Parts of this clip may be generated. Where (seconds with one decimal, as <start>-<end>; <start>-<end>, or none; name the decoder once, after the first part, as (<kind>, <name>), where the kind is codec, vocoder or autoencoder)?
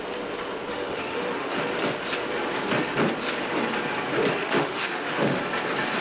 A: 0.7-1.6 (autoencoder, DAC-VAE); 4.4-5.4